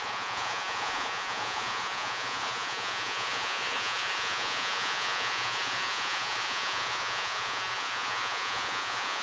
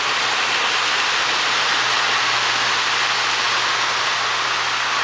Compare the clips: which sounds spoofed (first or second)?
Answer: first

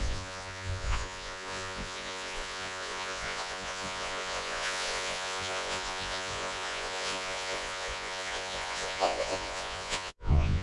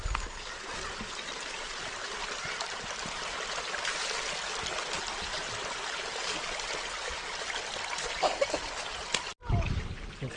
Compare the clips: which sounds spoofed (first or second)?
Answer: first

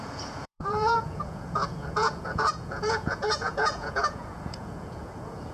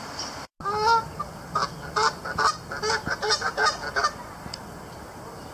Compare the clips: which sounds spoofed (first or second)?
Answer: first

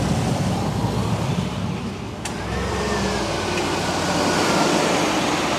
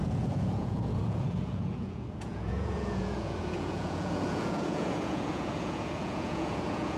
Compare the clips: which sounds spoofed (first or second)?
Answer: second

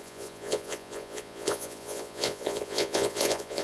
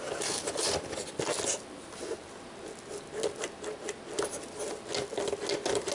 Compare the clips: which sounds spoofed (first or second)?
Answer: first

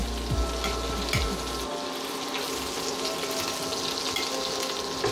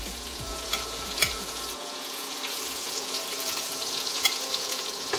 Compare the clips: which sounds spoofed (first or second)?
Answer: second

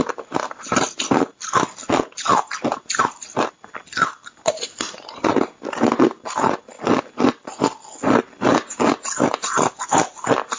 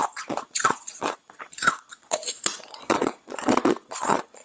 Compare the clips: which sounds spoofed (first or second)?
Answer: second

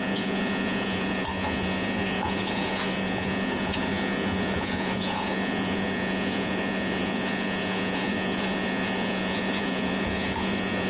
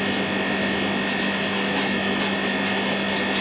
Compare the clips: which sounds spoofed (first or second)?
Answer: first